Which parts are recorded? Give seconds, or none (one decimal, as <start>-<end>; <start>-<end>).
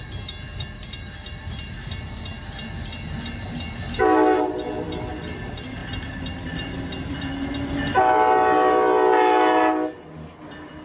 0.0-5.8; 7.2-10.8